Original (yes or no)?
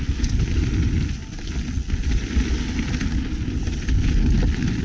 yes